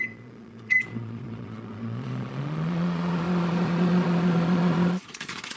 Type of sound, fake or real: fake